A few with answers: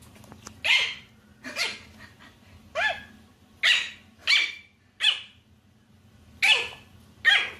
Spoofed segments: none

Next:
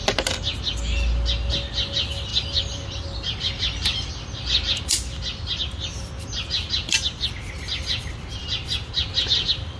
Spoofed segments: 2.3-4.1 (vocoder, BigVGAN v2); 5.9-8.1

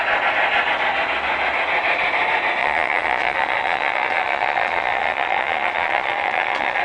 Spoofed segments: 2.6-6.8 (vocoder, Vocos)

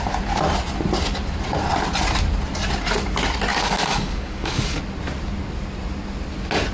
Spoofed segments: 3.5-4.8 (codec, DAC)

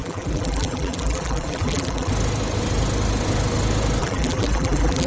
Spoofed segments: 0.0-2.1 (vocoder, BigVGAN v2); 4.0-5.1

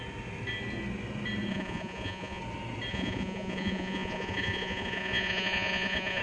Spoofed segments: 1.5-2.4 (vocoder, Vocos); 2.9-6.2

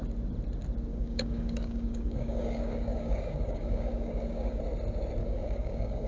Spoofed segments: 0.9-4.6 (codec, DAC); 5.2-6.1